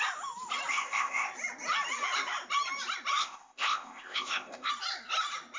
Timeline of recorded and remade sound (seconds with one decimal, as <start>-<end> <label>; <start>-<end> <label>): 0.0-0.7 recorded; 0.7-1.3 remade; 1.3-3.2 recorded; 3.2-4.7 remade; 4.7-5.6 recorded